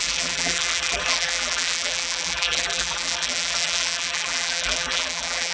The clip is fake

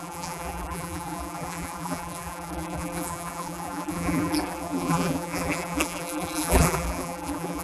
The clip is fake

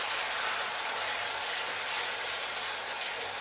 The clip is real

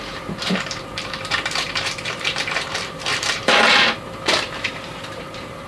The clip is fake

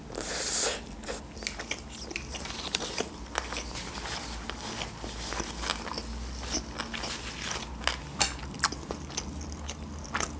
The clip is real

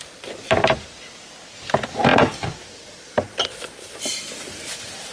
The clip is real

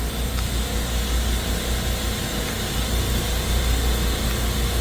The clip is real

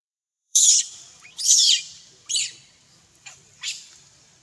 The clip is fake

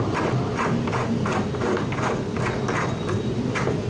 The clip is real